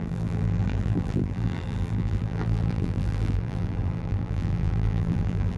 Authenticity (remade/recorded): remade